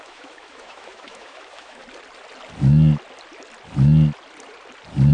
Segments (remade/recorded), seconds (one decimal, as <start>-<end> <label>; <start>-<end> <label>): 0.0-1.8 remade; 1.8-5.1 recorded